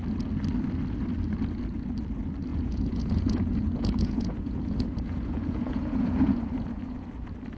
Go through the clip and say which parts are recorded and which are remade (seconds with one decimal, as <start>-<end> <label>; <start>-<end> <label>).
0.0-2.5 recorded; 2.5-7.1 remade; 7.1-7.6 recorded